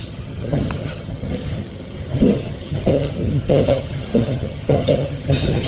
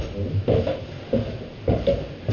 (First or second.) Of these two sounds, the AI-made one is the first